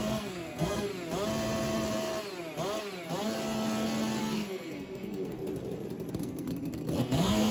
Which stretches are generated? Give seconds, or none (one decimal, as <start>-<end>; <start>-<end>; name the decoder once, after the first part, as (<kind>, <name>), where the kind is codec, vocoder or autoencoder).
0.0-0.9 (codec, SNAC); 4.2-5.4; 6.1-7.5